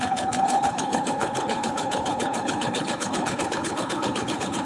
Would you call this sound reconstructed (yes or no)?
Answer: yes